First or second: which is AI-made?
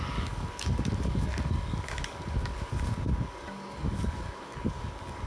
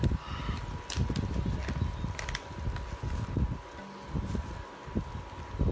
first